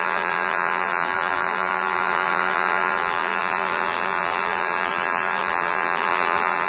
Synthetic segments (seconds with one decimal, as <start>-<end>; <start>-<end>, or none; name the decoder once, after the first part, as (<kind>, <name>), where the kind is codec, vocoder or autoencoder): 0.0-6.7 (vocoder, BigVGAN v2)